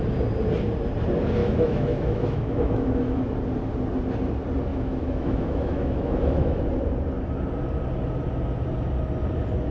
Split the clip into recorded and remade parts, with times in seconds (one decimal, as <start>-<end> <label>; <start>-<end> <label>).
0.0-1.4 recorded; 1.4-3.3 remade; 3.3-4.7 recorded; 4.7-6.6 remade; 6.6-9.7 recorded